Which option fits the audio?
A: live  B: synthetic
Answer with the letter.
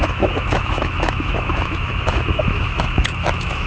B